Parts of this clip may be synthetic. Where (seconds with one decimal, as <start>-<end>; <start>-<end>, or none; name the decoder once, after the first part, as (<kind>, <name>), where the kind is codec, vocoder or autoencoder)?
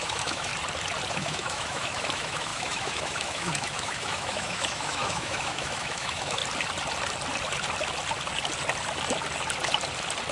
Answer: 0.0-0.5 (autoencoder, DAC-VAE); 1.1-6.4